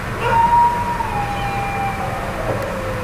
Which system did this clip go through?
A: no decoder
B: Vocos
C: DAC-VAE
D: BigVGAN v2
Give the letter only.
A